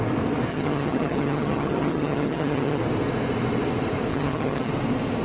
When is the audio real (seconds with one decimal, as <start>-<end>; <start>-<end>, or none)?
0.0-0.5; 2.8-4.1; 4.7-5.2